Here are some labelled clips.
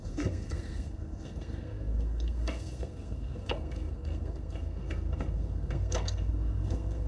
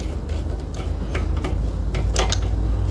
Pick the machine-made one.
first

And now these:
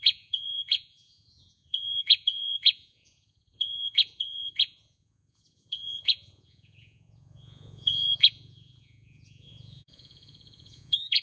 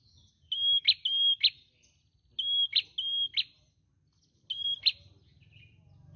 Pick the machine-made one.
first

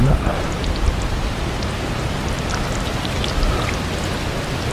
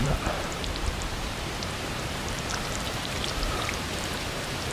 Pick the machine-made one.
second